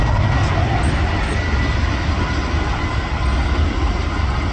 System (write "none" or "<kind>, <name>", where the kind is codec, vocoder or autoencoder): none